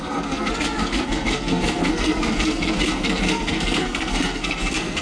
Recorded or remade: remade